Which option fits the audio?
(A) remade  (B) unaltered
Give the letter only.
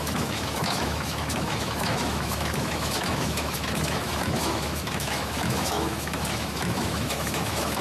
A